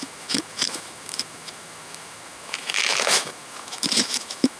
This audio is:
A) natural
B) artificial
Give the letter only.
B